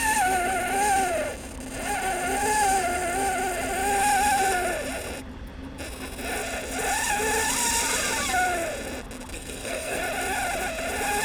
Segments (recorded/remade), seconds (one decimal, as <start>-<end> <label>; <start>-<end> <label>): 0.0-9.3 recorded; 9.3-10.0 remade; 10.0-11.2 recorded